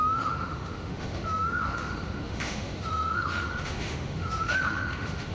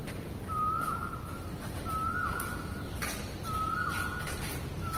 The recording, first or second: second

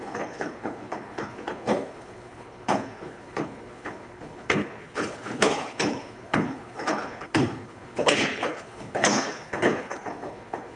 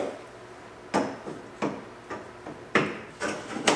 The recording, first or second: second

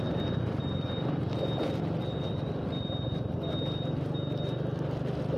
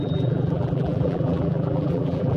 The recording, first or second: first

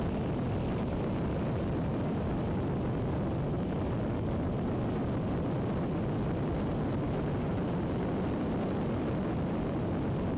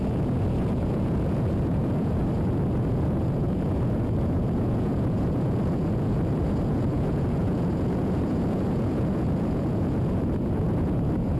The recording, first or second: first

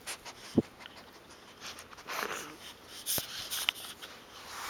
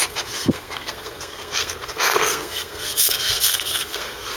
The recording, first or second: first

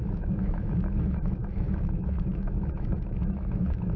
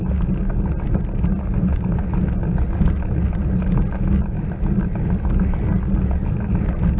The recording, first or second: second